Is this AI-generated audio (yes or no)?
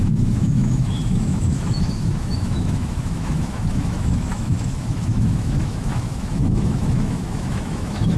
yes